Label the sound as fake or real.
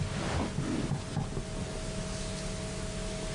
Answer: real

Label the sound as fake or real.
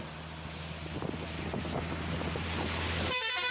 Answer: real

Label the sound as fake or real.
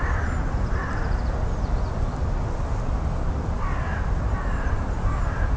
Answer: real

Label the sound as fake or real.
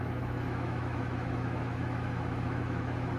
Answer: fake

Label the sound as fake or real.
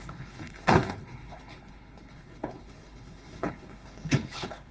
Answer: fake